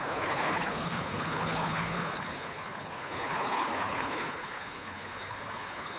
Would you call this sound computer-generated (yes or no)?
yes